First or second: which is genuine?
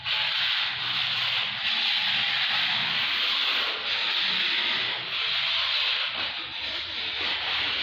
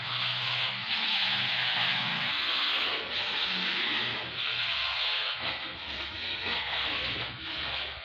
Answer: first